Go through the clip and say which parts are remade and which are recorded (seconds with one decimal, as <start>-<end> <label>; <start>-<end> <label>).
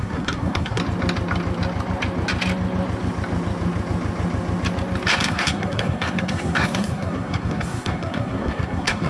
0.0-0.8 remade; 0.8-5.1 recorded; 5.1-9.1 remade